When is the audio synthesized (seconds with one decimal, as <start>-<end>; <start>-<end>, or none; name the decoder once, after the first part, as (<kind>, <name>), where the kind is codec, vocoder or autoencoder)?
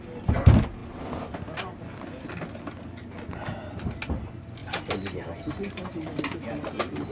4.6-6.6 (vocoder, BigVGAN v2)